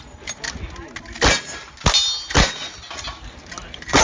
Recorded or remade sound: recorded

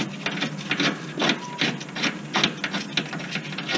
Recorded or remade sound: recorded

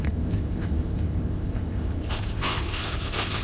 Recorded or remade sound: remade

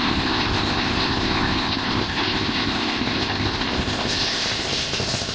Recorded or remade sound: remade